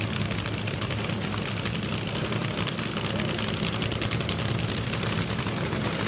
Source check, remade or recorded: recorded